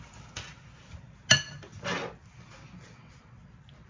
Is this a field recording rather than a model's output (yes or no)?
yes